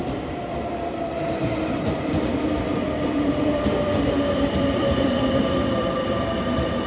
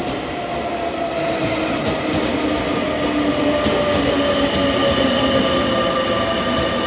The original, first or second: second